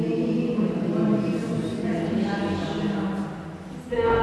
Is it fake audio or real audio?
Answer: real